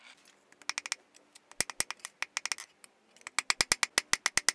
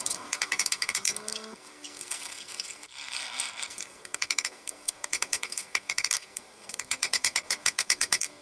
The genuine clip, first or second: first